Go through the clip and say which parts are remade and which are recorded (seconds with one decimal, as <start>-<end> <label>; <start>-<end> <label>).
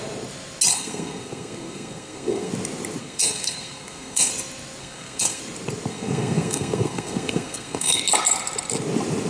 0.0-0.7 recorded; 0.7-2.5 remade; 2.5-3.0 recorded; 3.0-4.3 remade; 4.3-4.8 recorded; 4.8-5.4 remade; 5.4-5.9 recorded; 5.9-8.0 remade; 8.0-9.3 recorded